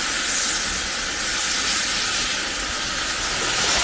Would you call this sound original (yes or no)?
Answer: yes